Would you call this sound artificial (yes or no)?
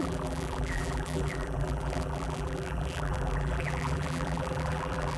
yes